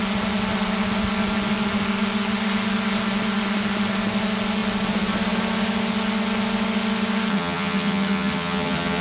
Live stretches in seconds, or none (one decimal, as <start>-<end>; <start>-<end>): 0.0-7.3